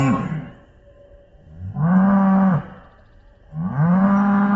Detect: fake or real real